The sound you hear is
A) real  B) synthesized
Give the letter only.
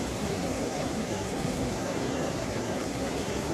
B